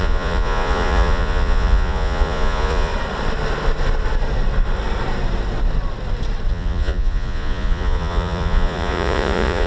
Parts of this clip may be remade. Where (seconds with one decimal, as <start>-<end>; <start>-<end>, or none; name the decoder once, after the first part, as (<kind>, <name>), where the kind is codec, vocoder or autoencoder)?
0.0-2.9 (vocoder, Vocos); 6.5-9.7